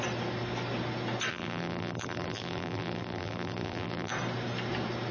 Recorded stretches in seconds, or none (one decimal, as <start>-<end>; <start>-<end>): 0.0-1.3; 4.1-5.1